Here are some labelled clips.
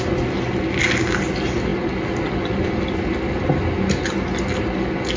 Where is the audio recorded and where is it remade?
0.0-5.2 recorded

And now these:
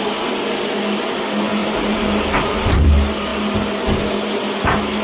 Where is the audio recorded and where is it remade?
0.0-1.6 recorded; 1.6-2.9 remade; 2.9-5.0 recorded